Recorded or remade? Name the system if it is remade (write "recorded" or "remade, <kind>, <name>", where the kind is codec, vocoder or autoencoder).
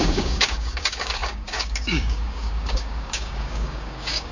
remade, codec, DAC